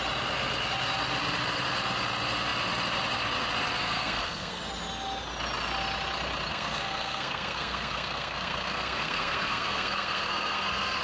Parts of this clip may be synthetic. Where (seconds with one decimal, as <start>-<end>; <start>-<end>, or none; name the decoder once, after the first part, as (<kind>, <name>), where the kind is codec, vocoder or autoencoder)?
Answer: 3.8-4.6 (codec, SNAC); 6.5-11.0